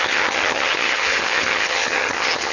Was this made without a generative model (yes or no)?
no